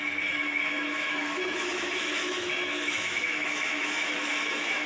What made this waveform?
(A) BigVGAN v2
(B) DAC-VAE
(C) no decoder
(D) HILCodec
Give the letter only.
B